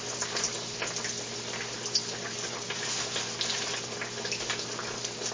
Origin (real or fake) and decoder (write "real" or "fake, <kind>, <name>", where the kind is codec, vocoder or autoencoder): real